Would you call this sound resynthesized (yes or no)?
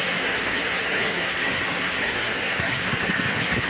yes